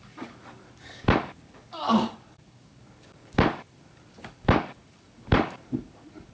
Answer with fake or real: fake